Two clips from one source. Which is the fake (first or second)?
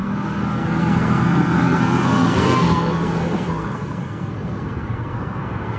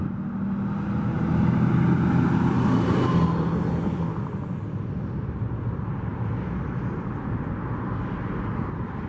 first